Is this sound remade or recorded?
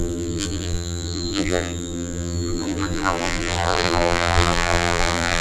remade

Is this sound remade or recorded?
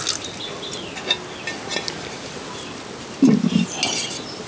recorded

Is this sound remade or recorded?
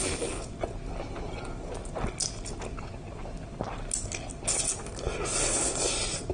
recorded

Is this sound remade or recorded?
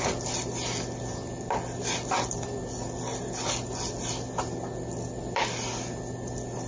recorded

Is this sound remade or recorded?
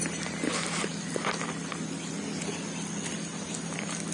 recorded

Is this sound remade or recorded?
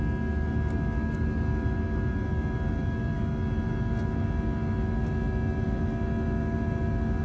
recorded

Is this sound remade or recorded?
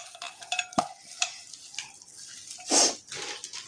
recorded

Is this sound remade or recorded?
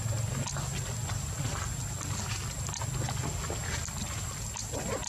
recorded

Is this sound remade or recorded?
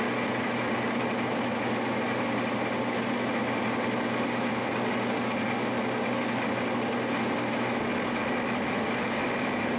recorded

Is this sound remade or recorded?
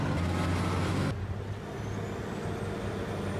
recorded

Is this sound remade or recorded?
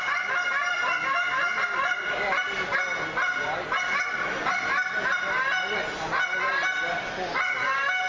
recorded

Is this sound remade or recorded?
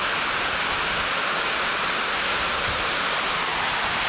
recorded